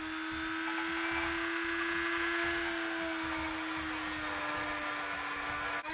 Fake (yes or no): no